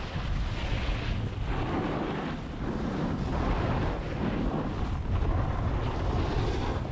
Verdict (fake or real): real